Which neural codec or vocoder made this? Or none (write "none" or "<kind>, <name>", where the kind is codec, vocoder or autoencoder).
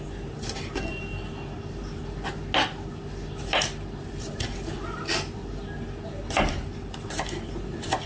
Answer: none